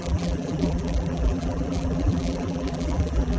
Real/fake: fake